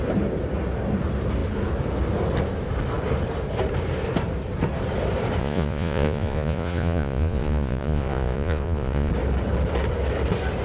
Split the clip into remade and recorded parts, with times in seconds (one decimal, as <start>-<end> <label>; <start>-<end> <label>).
0.0-5.4 recorded; 5.4-9.1 remade; 9.1-10.6 recorded